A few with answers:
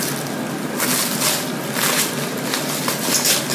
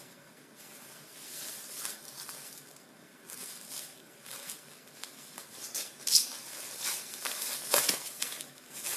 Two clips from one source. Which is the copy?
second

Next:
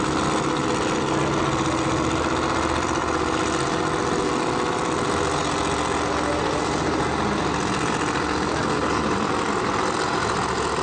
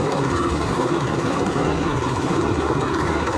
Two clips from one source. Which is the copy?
second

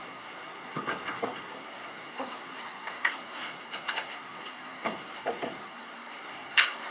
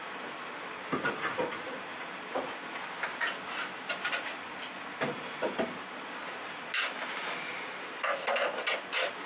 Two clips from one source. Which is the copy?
first